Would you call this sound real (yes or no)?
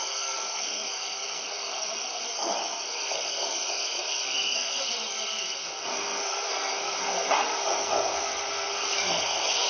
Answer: no